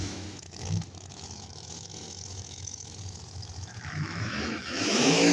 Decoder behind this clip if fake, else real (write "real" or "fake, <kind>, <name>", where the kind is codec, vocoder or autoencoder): fake, autoencoder, DAC-VAE